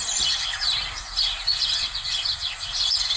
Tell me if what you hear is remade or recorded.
recorded